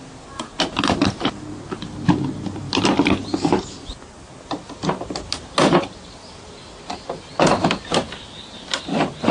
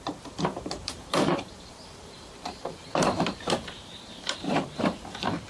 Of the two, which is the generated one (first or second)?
second